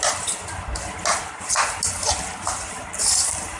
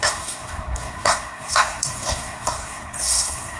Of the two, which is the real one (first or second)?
first